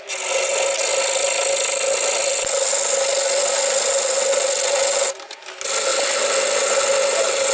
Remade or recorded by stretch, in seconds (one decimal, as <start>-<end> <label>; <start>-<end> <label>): 0.0-7.5 recorded